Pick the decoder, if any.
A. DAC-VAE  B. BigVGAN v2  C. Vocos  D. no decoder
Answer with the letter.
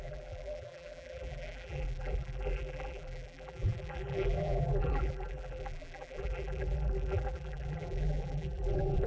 B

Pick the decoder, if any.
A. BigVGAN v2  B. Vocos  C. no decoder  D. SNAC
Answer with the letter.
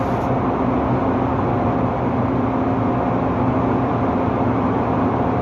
C